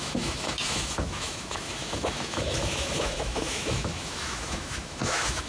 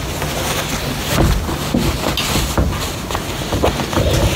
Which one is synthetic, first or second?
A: first